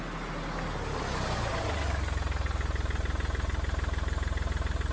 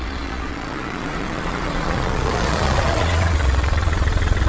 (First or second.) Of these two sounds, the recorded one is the first